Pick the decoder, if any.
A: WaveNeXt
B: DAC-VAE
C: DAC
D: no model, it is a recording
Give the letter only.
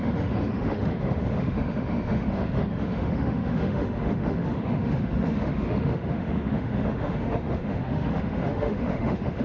B